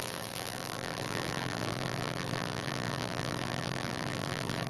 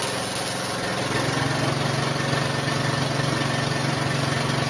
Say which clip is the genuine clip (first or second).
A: second